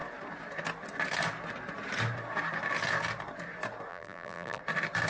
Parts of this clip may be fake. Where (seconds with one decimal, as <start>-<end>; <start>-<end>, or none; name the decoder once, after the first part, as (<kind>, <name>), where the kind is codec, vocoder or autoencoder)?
3.9-4.6 (vocoder, BigVGAN v2)